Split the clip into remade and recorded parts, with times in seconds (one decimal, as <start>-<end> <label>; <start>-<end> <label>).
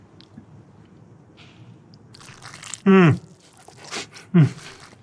0.0-5.0 recorded